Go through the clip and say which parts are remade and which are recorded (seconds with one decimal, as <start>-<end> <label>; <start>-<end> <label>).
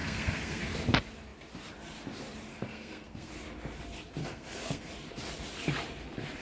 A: 0.0-0.6 remade; 0.6-2.5 recorded; 2.5-3.3 remade; 3.3-4.2 recorded; 4.2-4.9 remade; 4.9-6.4 recorded